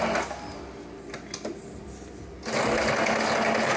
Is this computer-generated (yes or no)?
no